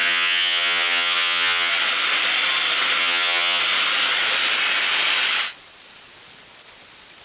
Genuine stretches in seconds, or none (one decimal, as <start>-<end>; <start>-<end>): 1.7-3.0; 3.6-7.2